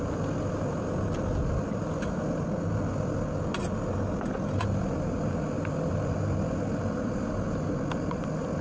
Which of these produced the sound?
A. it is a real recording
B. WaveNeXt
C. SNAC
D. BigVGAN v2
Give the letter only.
A